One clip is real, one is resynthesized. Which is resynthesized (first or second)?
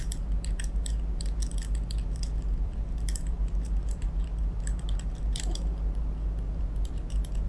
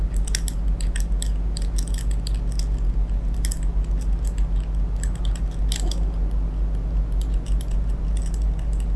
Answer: first